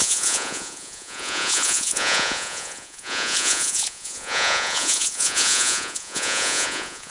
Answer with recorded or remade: remade